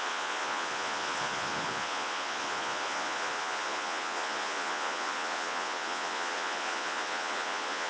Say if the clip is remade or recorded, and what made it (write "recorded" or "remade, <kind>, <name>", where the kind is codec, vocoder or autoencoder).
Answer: remade, vocoder, Vocos